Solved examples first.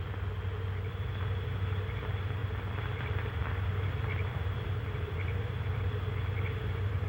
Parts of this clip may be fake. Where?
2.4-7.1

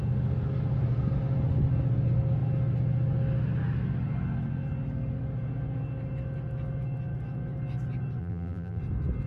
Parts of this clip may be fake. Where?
8.2-8.8

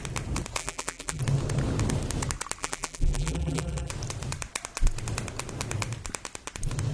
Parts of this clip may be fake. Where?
0.6-1.2; 2.6-3.9

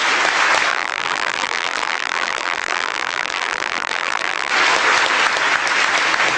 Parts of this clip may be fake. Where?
0.7-4.5